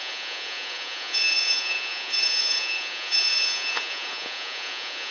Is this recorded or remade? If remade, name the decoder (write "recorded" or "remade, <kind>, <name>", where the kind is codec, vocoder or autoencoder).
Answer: remade, vocoder, Vocos